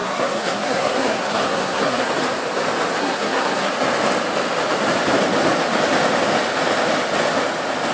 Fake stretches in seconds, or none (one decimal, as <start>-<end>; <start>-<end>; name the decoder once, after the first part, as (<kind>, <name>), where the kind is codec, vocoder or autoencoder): 0.0-2.1 (codec, SNAC); 3.0-3.7